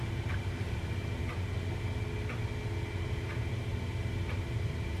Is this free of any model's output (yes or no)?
yes